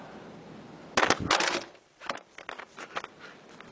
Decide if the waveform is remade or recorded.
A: recorded